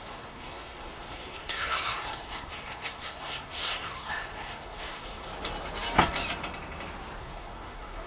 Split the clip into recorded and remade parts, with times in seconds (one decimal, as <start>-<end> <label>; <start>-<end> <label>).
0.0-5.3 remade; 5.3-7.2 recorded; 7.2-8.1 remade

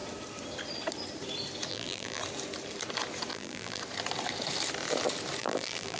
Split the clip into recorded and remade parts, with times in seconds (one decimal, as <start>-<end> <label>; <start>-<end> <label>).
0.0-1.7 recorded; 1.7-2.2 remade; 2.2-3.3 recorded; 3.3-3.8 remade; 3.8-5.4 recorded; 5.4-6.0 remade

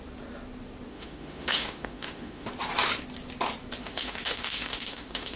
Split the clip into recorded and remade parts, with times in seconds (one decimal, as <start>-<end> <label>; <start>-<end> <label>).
0.0-0.9 recorded; 0.9-2.5 remade; 2.5-3.8 recorded; 3.8-5.4 remade

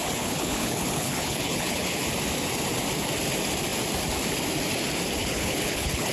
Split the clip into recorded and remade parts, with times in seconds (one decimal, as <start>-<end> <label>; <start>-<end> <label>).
0.0-2.0 remade; 2.0-5.2 recorded; 5.2-6.1 remade